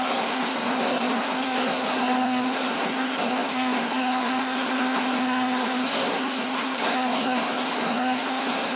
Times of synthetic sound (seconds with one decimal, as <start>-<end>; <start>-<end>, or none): 0.0-8.8